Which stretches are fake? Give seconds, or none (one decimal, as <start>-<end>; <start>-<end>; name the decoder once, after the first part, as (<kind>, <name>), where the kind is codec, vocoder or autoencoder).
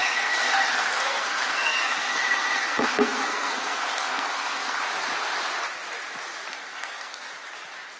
0.0-4.8 (codec, SNAC); 6.5-7.3